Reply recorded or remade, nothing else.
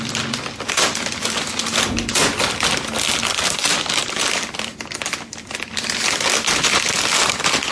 recorded